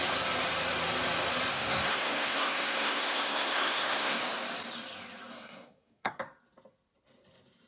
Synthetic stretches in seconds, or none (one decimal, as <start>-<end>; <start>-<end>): 1.5-4.2; 5.3-6.2